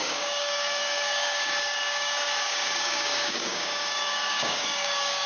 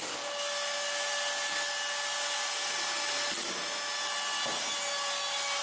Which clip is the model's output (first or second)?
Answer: first